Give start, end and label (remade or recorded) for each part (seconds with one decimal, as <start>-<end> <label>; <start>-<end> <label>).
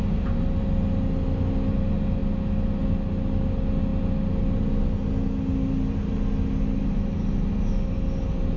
0.0-8.6 recorded